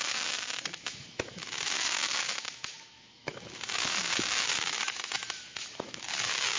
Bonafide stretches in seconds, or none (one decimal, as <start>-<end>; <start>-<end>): none